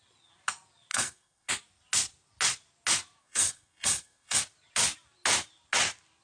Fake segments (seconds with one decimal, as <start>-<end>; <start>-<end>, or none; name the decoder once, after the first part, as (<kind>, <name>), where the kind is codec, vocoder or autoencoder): 0.9-1.5 (codec, SNAC); 3.2-4.4